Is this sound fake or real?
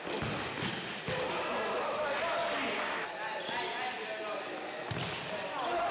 real